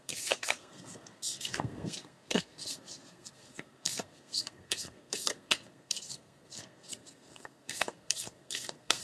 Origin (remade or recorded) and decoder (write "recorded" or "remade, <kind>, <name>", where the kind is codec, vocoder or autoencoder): remade, codec, SNAC